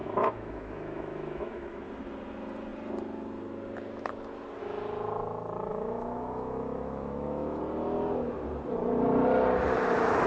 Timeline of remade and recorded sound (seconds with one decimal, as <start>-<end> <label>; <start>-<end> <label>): 0.0-1.8 remade; 1.8-5.7 recorded; 5.7-7.6 remade; 7.6-10.3 recorded